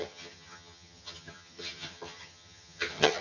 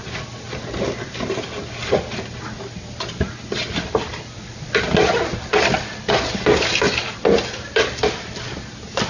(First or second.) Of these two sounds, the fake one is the first